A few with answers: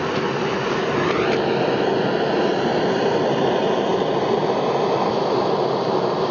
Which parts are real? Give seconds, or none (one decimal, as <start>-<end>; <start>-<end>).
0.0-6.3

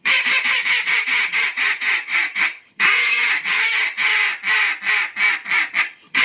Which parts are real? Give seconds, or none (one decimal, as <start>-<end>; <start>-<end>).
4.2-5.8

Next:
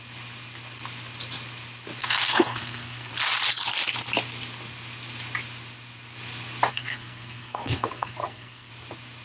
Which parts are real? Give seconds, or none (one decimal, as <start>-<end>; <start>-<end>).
0.0-2.0; 3.1-6.7; 8.7-9.2

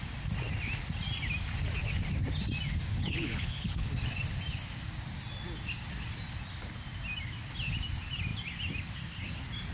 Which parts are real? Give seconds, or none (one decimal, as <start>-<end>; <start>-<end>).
0.0-2.9; 3.9-9.7

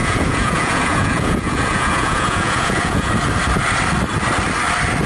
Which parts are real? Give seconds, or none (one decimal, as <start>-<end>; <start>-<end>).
3.1-5.1

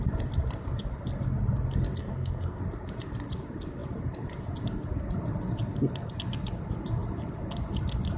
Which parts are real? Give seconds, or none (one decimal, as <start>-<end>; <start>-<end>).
0.0-2.0; 2.6-8.2